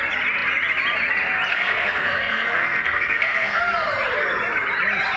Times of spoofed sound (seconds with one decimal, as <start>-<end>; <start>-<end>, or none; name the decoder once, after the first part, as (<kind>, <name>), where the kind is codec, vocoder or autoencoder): 1.5-3.6 (codec, SNAC)

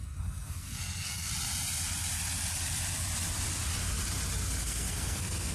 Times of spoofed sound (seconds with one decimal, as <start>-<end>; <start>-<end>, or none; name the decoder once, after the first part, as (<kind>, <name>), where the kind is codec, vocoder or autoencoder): 0.0-1.3 (codec, SNAC); 4.6-5.5